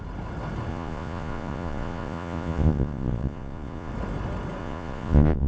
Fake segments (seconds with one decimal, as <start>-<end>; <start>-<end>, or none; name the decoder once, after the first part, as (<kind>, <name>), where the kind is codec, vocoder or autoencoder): 0.7-3.9 (vocoder, Vocos); 4.6-5.5